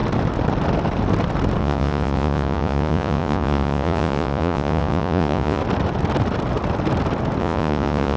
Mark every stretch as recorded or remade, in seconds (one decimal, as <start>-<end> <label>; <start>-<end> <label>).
0.0-1.6 recorded; 1.6-5.6 remade; 5.6-7.4 recorded; 7.4-8.2 remade